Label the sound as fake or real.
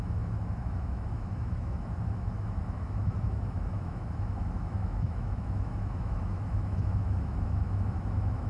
fake